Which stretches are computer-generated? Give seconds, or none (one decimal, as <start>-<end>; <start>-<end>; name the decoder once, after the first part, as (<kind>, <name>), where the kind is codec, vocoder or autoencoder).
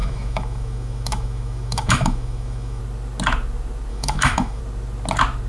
0.0-2.8 (autoencoder, DAC-VAE); 3.9-4.6